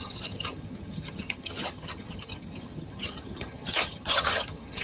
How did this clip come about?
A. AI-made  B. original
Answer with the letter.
A